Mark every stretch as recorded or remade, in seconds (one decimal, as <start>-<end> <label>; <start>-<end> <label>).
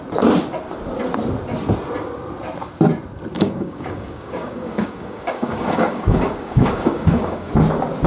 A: 0.0-3.3 recorded; 3.3-7.5 remade; 7.5-8.1 recorded